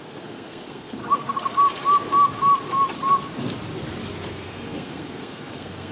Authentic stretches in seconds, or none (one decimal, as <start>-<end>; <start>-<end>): 1.0-4.3